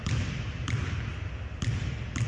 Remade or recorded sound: recorded